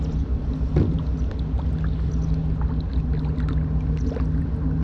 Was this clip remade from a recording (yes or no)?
no